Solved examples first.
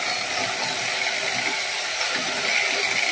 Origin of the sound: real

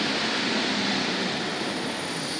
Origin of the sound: real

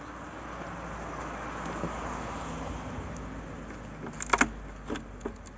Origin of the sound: real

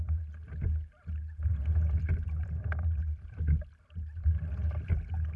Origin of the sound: real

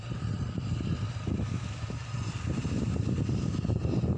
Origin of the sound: real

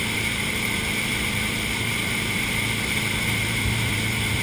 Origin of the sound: fake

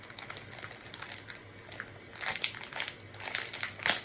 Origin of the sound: real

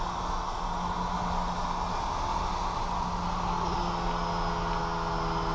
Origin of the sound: real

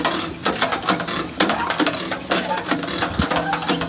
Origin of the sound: real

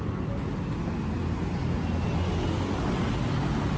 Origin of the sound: real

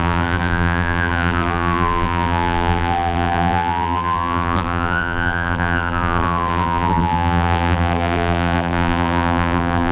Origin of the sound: fake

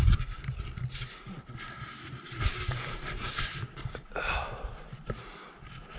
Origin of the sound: real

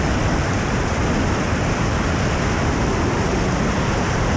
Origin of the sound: fake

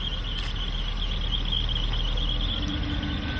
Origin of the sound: real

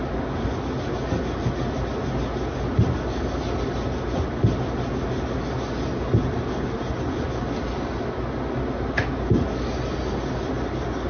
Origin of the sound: real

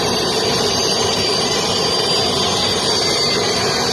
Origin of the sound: fake